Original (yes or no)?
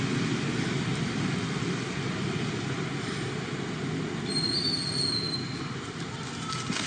yes